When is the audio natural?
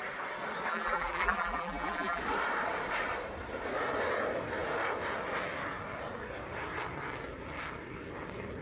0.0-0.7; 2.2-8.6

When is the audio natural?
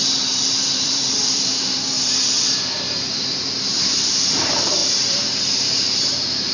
none